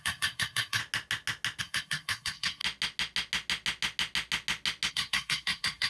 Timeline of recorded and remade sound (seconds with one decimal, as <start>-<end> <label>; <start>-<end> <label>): 0.0-0.8 remade; 0.8-1.6 recorded; 1.6-2.6 remade; 2.6-4.9 recorded; 4.9-5.9 remade